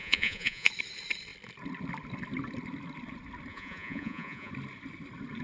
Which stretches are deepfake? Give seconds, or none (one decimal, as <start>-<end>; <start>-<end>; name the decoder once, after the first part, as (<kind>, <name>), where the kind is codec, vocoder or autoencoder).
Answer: 0.0-0.7 (vocoder, Vocos); 3.5-4.5